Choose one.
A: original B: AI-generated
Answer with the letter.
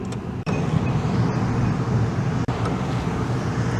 A